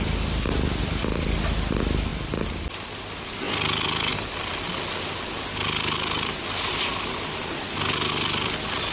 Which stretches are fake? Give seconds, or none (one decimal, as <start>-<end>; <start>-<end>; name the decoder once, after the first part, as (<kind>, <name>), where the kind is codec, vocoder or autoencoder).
none